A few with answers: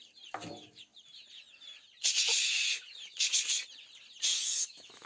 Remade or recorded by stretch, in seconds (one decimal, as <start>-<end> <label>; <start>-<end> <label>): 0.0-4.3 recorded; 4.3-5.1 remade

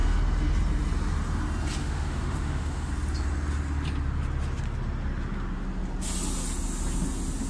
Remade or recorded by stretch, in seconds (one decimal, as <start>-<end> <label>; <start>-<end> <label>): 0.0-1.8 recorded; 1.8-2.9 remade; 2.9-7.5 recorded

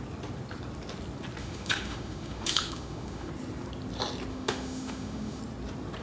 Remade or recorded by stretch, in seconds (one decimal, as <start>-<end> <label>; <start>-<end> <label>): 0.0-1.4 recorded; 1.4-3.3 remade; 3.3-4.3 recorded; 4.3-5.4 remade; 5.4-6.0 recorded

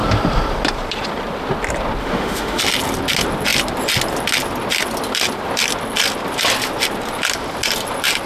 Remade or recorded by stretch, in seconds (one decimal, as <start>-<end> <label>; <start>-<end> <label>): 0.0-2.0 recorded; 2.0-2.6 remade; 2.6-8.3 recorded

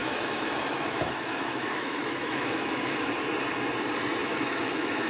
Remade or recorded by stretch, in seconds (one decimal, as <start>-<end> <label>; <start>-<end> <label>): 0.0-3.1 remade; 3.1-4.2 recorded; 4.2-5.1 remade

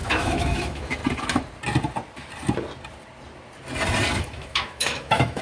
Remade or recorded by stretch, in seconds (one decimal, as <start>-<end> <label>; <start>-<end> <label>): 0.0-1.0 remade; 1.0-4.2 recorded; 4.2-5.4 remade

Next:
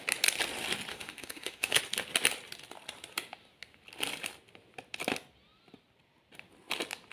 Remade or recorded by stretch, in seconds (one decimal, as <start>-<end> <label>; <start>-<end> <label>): 0.0-0.9 recorded; 0.9-1.8 remade; 1.8-7.1 recorded